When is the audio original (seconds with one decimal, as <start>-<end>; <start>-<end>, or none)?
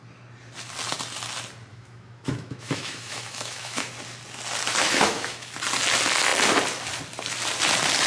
0.0-1.7; 3.9-4.8; 5.5-8.1